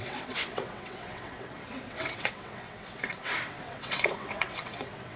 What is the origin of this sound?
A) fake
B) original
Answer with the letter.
A